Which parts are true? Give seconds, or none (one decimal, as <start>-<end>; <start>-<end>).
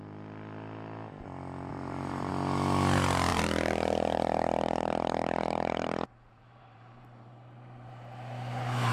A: 0.0-1.7; 2.3-3.3; 7.9-8.9